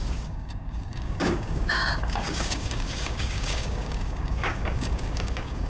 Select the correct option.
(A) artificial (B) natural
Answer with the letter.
A